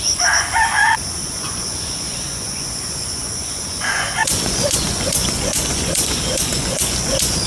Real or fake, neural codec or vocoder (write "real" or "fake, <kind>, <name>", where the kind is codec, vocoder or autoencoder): fake, vocoder, Vocos